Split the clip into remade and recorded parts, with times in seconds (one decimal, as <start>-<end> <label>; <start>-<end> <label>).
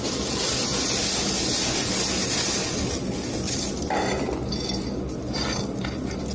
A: 0.0-6.3 recorded